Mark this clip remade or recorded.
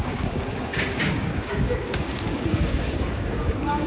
remade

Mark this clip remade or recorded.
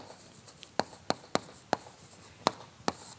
recorded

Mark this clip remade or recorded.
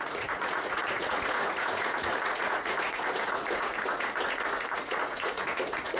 remade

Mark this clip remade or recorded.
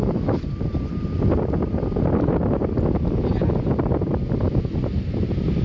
recorded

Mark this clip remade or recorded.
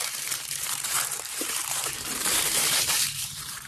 remade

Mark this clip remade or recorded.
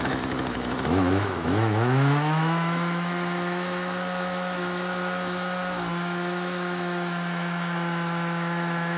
remade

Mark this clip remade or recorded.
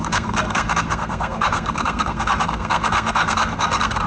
remade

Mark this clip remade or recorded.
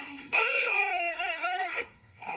remade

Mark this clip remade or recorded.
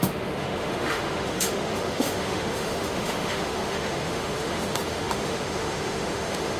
remade